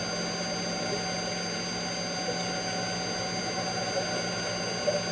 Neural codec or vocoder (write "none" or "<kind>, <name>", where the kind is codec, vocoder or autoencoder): none